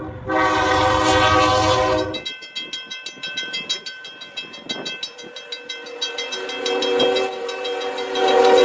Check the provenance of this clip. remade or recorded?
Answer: recorded